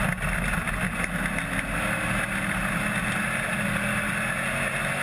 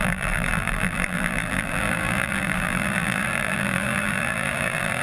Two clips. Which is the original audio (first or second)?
first